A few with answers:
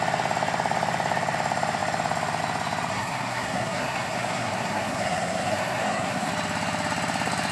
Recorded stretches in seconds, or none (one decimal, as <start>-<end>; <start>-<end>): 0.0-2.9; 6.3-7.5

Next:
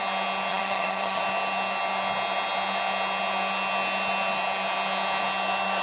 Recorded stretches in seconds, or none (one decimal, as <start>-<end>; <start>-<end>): 0.0-0.5; 1.2-5.8

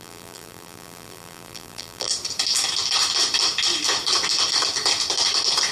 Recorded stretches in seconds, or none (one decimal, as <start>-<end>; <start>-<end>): 2.1-5.7